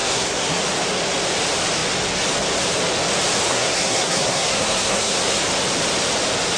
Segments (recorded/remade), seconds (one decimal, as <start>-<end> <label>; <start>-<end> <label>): 0.0-0.6 remade; 0.6-3.5 recorded; 3.5-5.4 remade; 5.4-6.6 recorded